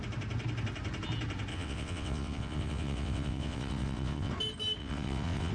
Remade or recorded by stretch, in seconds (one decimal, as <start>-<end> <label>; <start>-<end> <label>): 0.0-1.5 recorded; 1.5-4.3 remade; 4.3-4.8 recorded; 4.8-5.5 remade

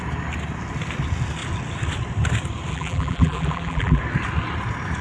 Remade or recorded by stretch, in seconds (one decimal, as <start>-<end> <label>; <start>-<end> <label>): 0.0-2.7 recorded; 2.7-4.0 remade; 4.0-5.0 recorded

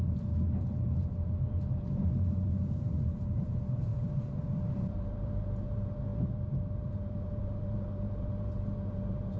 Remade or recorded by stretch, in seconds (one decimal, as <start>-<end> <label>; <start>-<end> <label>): 0.0-9.4 remade

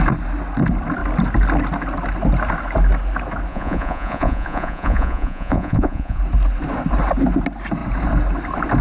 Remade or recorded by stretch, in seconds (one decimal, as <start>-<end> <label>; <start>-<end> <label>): 0.0-3.5 recorded; 3.5-6.2 remade; 6.2-8.8 recorded

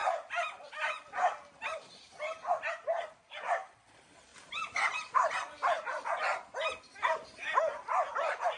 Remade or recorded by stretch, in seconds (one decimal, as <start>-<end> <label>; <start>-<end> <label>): 0.0-4.3 recorded; 4.3-6.2 remade; 6.2-8.6 recorded

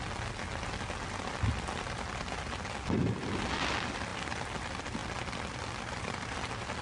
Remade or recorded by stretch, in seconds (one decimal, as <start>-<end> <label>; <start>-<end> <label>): 0.0-6.8 recorded

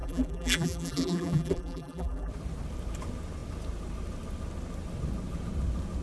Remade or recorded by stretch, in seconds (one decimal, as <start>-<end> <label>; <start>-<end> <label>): 0.0-2.3 remade; 2.3-6.0 recorded